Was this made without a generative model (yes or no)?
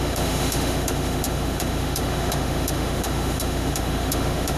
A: no